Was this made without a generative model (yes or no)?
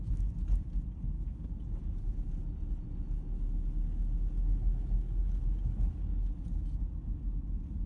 yes